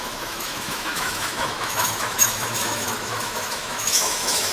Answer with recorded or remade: remade